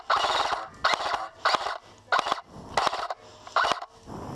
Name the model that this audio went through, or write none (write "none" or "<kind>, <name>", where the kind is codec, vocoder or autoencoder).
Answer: none